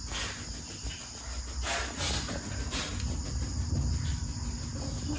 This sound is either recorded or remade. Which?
recorded